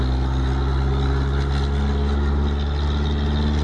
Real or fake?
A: real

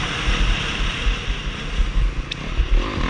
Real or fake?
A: real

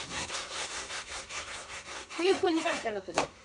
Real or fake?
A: fake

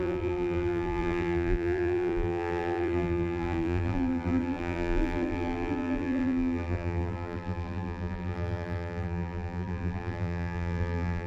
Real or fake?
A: fake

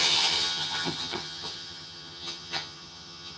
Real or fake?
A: fake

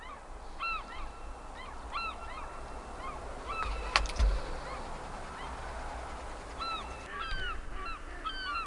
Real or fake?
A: real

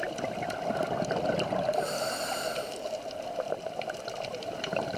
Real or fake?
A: fake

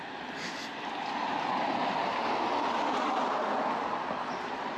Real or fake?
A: fake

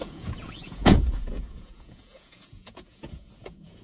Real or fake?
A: fake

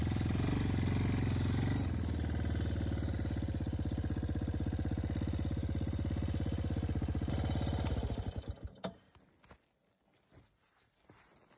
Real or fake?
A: real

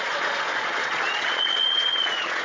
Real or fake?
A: fake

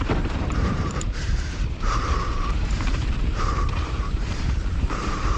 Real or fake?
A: fake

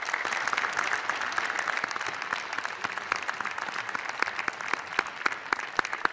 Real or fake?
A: real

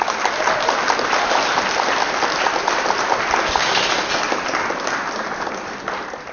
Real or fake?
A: real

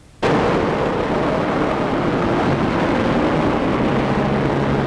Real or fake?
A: real